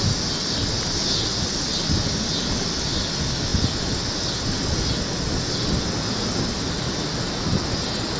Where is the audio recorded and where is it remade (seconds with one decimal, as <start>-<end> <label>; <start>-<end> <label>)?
0.0-8.2 recorded